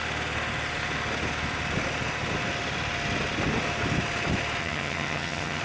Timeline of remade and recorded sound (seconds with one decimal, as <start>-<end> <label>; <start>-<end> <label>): 0.0-4.6 recorded; 4.6-5.6 remade